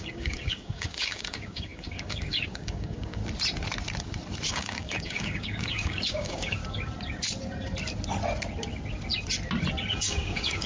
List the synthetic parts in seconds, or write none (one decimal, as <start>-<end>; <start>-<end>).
0.0-3.2; 4.5-6.6; 10.0-10.7